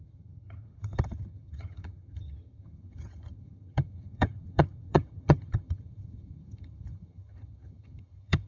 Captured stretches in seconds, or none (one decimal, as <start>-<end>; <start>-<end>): none